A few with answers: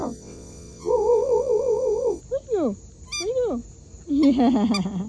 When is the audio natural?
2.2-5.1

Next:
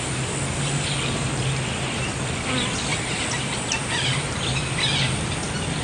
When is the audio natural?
0.0-5.8

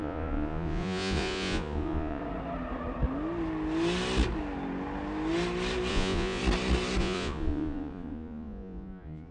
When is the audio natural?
2.2-5.9; 6.4-7.0

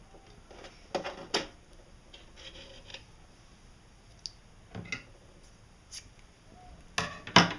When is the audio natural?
0.0-7.6

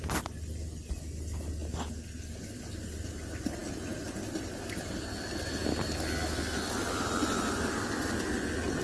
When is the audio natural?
0.0-8.8